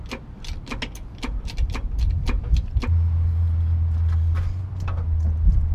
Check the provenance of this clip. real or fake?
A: real